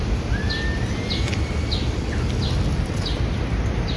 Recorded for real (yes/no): yes